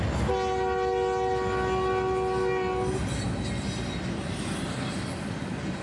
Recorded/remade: recorded